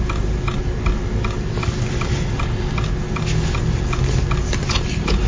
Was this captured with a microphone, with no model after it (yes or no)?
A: yes